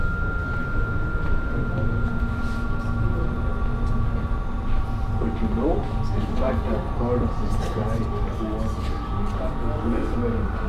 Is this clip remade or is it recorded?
recorded